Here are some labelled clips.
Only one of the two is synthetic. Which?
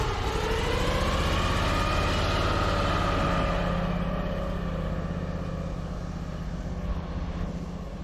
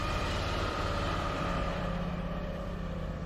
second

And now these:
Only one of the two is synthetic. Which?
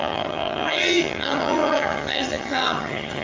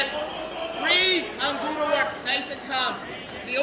first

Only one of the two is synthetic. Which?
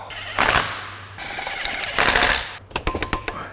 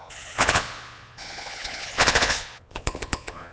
second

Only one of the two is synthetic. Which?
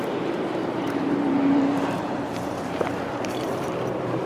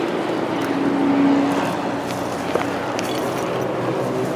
first